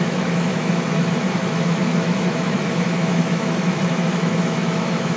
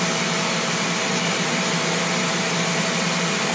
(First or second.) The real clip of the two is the second